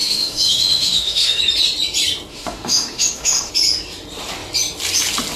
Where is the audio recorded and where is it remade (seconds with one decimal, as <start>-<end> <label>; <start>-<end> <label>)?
0.0-1.4 remade; 1.4-2.3 recorded; 2.3-3.5 remade; 3.5-5.4 recorded